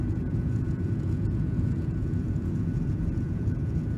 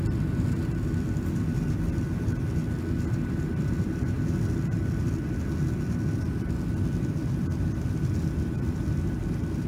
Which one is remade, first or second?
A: first